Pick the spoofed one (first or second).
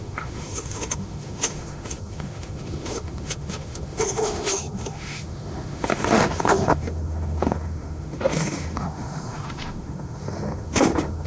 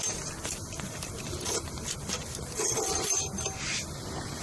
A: first